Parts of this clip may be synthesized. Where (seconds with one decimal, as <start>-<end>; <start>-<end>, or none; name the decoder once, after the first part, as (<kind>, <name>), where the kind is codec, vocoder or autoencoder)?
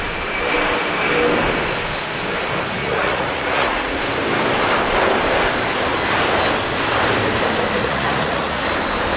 2.8-4.0 (vocoder, Vocos); 7.8-8.6